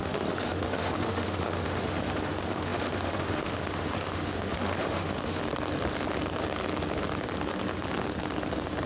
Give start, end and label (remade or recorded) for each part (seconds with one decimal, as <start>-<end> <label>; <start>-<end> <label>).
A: 0.0-5.4 remade; 5.4-8.9 recorded